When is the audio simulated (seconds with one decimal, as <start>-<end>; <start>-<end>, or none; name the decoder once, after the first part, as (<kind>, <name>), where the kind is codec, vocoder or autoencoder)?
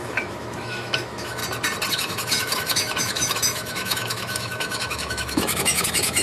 0.0-1.4 (autoencoder, DAC-VAE); 1.9-6.2